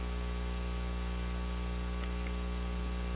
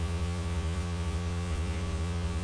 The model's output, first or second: second